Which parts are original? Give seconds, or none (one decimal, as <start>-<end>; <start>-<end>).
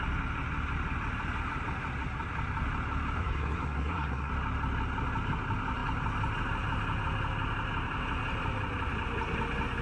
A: 0.0-3.2; 4.3-9.8